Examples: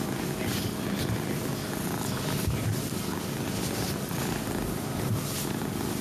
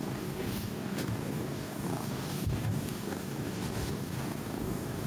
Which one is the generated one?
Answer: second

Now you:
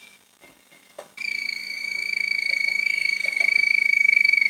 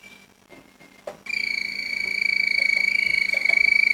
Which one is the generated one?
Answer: first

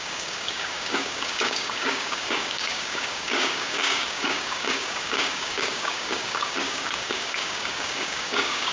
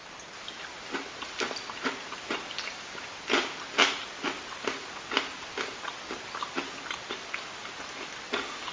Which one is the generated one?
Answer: first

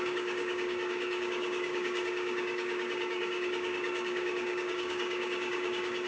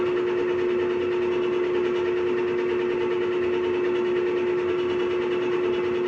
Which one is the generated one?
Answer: first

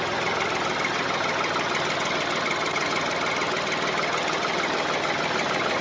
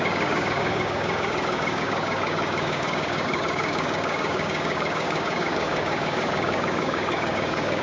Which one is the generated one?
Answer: second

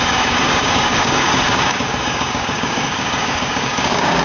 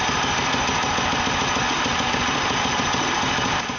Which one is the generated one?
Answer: first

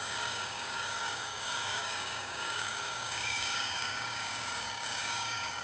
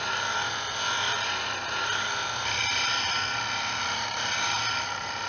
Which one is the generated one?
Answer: first